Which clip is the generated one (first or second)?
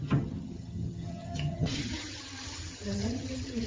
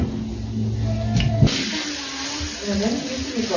first